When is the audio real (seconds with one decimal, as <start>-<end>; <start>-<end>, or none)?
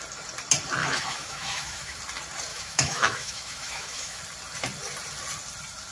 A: 0.0-0.8; 2.0-2.5; 4.2-5.9